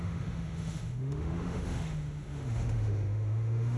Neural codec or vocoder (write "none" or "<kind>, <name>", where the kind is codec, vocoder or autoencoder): autoencoder, DAC-VAE